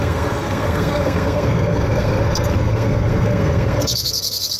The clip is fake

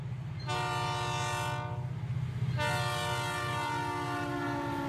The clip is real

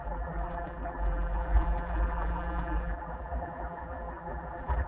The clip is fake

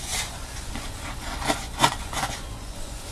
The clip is fake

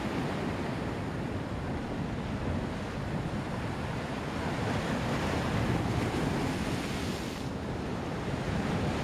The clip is real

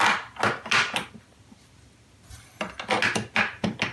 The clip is real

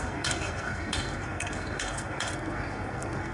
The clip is fake